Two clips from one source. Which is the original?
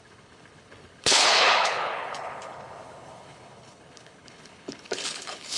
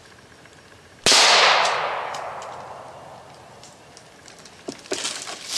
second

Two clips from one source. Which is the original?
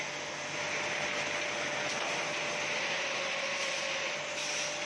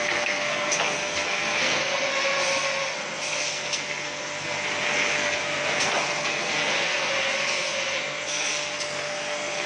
first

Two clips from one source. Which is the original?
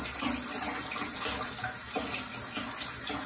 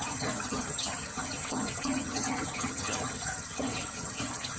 first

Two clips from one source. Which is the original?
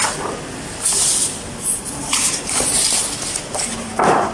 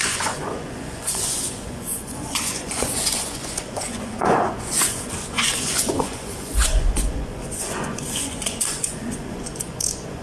first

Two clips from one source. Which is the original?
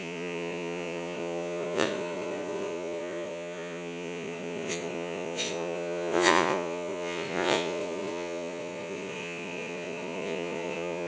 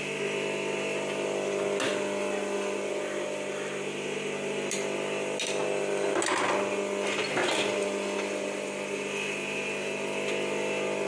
second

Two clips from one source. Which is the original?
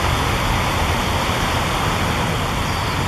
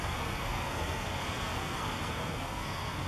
first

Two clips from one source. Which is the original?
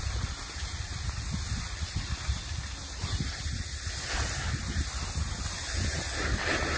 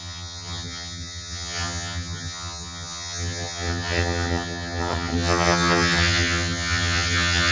first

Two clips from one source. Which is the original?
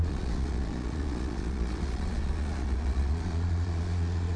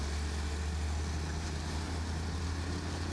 second